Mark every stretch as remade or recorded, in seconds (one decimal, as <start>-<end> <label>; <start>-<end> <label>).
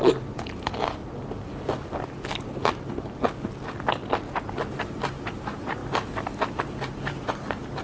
0.0-1.0 remade; 1.0-4.8 recorded; 4.8-5.8 remade; 5.8-6.5 recorded; 6.5-7.8 remade